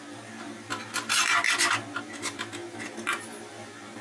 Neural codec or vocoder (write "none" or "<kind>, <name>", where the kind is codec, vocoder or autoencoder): none